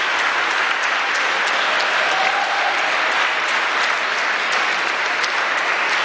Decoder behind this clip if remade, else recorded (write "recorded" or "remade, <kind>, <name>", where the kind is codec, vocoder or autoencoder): recorded